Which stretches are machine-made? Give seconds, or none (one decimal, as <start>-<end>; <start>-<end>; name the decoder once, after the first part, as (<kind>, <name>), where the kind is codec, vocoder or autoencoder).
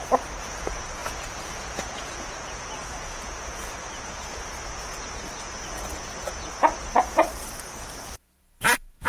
0.0-9.1 (vocoder, Vocos)